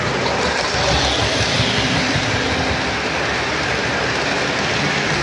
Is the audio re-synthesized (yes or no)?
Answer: no